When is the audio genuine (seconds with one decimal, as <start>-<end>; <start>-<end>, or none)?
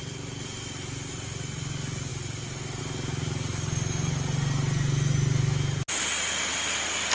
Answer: 0.0-7.1